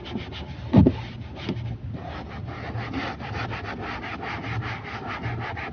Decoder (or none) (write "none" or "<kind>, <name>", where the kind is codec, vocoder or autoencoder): none